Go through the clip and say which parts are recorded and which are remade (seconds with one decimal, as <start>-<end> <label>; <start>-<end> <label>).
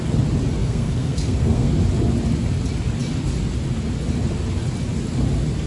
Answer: 0.0-0.6 recorded; 0.6-1.7 remade; 1.7-5.7 recorded